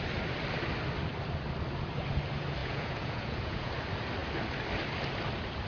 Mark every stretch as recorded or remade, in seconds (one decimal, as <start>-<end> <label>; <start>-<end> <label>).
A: 0.0-2.6 recorded; 2.6-3.7 remade; 3.7-5.7 recorded